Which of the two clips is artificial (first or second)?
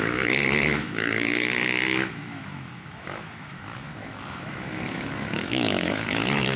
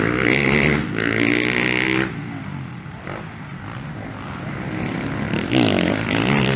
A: first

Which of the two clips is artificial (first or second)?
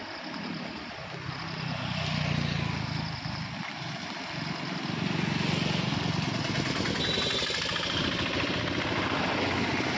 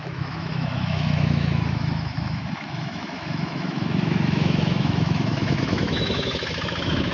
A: second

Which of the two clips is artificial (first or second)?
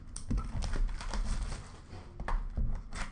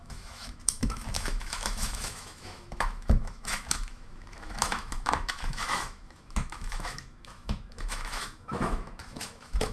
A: second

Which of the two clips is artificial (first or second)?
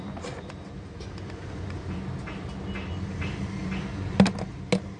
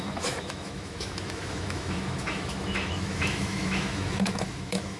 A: second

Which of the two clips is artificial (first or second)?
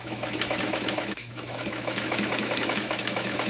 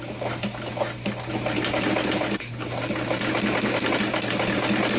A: first